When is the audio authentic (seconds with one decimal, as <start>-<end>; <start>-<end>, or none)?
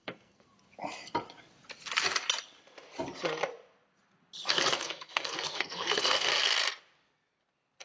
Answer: 0.5-4.4; 6.3-7.8